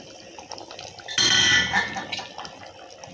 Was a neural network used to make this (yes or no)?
no